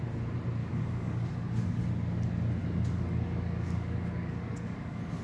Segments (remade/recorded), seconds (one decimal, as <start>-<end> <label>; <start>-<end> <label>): 0.0-0.6 recorded; 0.6-1.8 remade; 1.8-2.6 recorded; 2.6-5.2 remade